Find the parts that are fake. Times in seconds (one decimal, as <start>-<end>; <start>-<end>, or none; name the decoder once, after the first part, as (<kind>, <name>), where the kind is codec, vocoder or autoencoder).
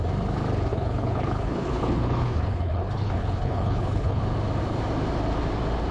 0.7-4.2 (codec, HILCodec)